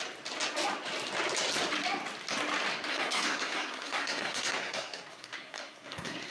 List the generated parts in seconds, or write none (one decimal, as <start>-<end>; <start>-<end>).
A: 2.9-6.3